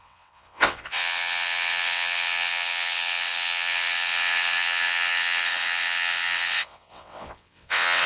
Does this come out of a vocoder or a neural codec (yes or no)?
yes